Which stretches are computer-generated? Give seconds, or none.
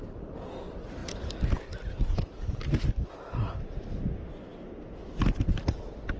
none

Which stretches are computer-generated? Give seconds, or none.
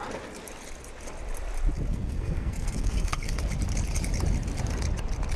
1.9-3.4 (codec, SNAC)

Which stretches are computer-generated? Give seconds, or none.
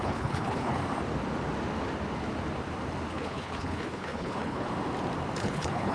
0.0-0.8 (codec, HILCodec); 3.1-4.7; 5.4-5.9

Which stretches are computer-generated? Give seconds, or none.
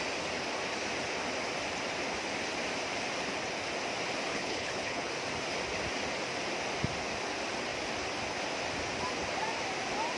4.3-5.1 (codec, HILCodec)